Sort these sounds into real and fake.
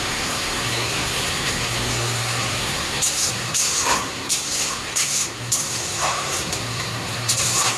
fake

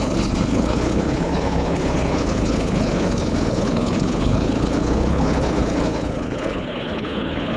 fake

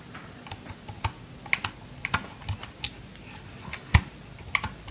real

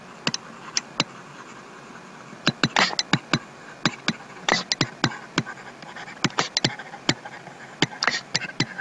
real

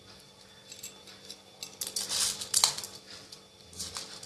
real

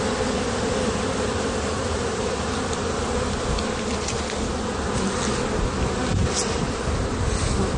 real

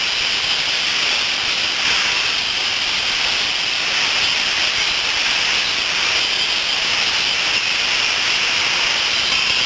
real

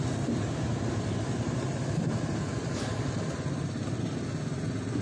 real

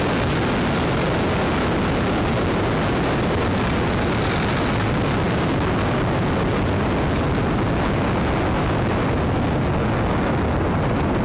real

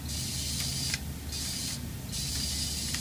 real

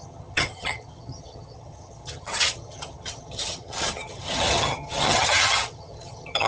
fake